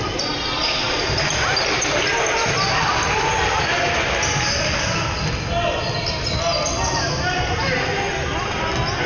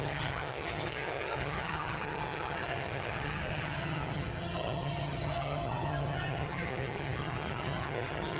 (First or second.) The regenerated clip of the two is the second